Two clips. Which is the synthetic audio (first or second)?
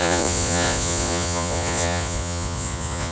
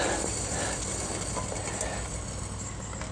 first